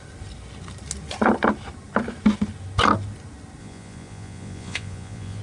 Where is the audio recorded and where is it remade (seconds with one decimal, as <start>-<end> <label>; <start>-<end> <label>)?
0.0-3.6 recorded; 3.6-5.4 remade